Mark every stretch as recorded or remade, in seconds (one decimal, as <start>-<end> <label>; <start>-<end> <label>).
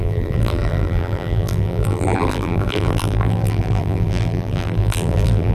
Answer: 0.0-5.5 remade